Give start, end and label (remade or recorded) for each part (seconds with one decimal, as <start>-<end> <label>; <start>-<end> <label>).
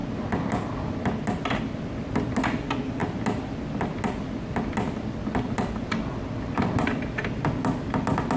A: 0.0-8.4 recorded